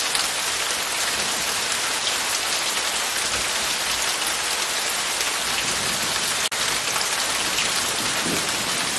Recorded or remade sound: recorded